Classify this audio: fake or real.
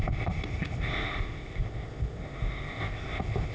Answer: fake